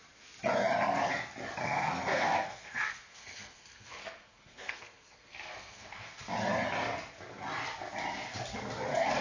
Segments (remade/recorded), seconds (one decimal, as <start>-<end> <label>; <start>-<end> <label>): 0.0-1.6 recorded; 1.6-6.3 remade; 6.3-9.2 recorded